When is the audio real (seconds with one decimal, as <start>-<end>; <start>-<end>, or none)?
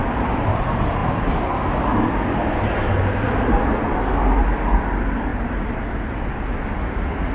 0.6-1.0; 3.9-5.3; 5.9-7.3